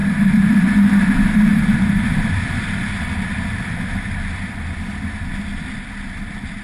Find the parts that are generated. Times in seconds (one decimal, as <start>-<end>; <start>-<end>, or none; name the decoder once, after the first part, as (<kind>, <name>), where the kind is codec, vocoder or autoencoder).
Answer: 0.0-0.9 (vocoder, BigVGAN v2); 1.5-5.3